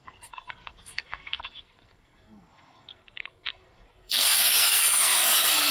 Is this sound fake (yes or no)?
yes